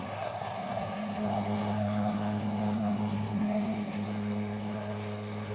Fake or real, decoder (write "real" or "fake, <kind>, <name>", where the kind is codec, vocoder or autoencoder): fake, codec, SNAC